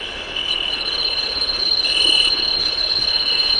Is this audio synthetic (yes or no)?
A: yes